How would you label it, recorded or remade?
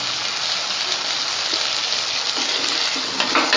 recorded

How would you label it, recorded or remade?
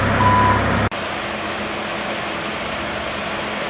recorded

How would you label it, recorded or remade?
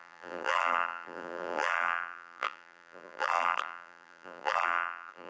remade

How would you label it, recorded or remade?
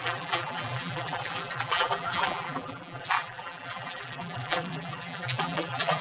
remade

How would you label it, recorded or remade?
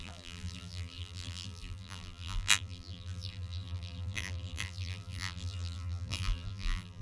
remade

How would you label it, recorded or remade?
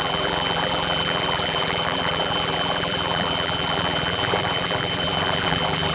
remade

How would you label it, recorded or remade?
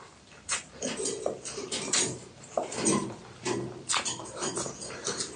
remade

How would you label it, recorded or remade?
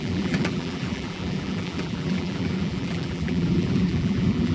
remade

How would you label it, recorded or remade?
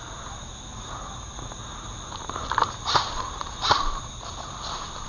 remade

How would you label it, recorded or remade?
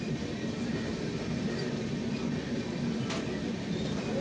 recorded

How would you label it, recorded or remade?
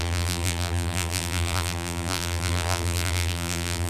remade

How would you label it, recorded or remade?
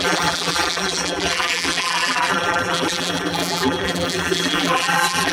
remade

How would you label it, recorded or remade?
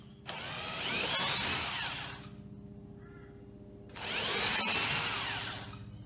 recorded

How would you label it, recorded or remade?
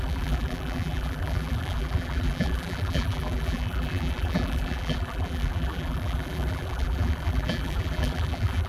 remade